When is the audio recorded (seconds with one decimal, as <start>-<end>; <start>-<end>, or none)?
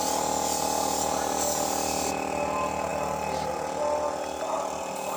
0.0-5.2